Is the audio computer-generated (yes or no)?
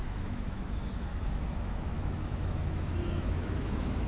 yes